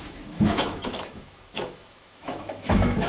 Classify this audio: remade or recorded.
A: remade